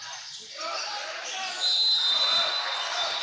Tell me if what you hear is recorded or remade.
recorded